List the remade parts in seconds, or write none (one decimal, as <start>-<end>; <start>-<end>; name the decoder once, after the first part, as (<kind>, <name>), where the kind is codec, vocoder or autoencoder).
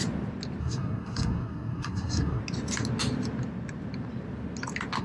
0.6-2.4 (codec, SNAC)